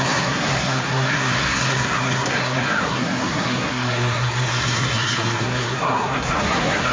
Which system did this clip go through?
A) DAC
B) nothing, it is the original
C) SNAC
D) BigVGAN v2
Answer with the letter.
C